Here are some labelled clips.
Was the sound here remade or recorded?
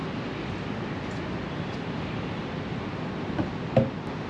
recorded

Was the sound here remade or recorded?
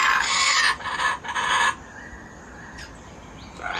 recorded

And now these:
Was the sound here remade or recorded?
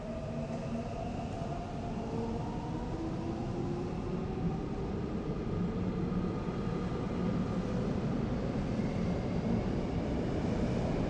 recorded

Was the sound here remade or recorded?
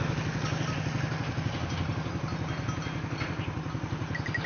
recorded